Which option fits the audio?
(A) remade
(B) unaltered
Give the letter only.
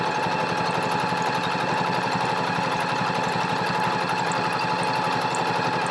B